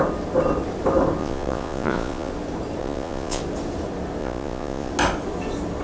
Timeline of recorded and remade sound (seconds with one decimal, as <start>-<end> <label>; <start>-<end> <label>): 0.0-1.2 recorded; 1.2-2.3 remade; 2.3-2.8 recorded; 2.8-3.4 remade; 3.4-4.2 recorded; 4.2-4.9 remade; 4.9-5.8 recorded

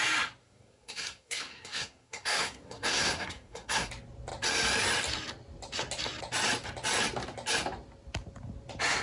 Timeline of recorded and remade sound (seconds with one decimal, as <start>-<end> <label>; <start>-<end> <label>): 0.0-0.4 recorded; 0.4-3.9 remade; 3.9-9.0 recorded

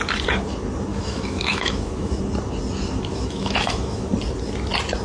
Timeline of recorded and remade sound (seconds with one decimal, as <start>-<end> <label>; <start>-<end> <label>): 0.0-0.9 recorded; 0.9-2.2 remade; 2.2-3.1 recorded; 3.1-4.1 remade; 4.1-5.0 recorded

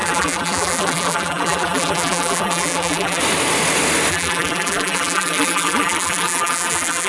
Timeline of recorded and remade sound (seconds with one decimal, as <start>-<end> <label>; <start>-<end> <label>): 0.0-3.2 remade; 3.2-4.1 recorded; 4.1-7.1 remade